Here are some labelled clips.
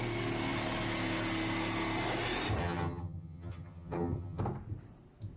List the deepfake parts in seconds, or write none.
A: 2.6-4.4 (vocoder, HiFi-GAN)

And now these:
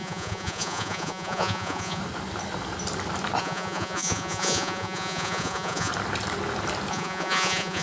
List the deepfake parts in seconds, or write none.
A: 0.0-2.0 (vocoder, Vocos); 3.4-5.9; 6.9-7.8

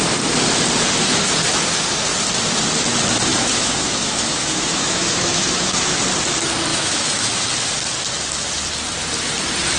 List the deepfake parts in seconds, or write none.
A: 3.3-6.0 (autoencoder, DAC-VAE); 6.7-7.5